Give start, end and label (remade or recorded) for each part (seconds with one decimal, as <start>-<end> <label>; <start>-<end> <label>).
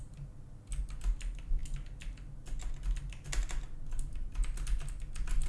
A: 0.0-5.5 recorded